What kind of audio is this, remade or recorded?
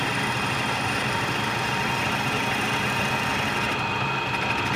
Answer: remade